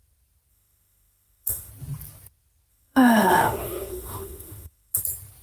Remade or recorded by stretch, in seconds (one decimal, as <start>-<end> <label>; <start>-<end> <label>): 0.0-0.5 recorded; 0.5-1.7 remade; 1.7-2.7 recorded; 2.7-5.0 remade; 5.0-5.4 recorded